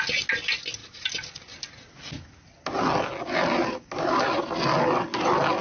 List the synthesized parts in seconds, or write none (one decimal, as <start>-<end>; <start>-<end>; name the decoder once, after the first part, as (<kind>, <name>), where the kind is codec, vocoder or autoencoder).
none